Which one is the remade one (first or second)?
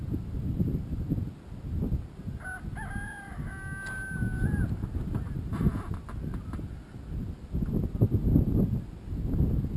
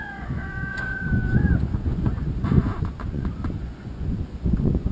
second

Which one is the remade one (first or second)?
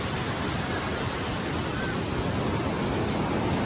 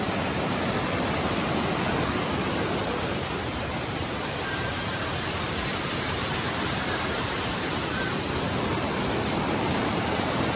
second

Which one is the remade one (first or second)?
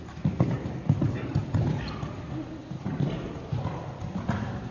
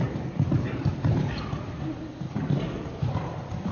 second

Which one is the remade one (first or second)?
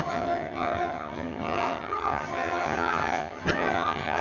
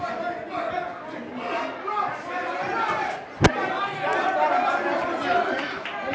first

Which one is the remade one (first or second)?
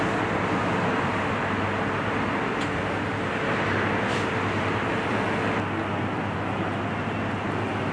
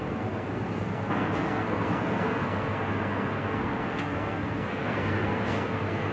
second